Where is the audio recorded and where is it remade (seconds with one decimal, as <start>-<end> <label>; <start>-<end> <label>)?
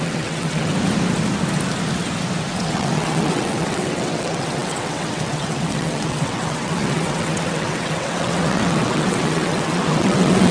0.0-0.7 remade; 0.7-2.6 recorded; 2.6-10.5 remade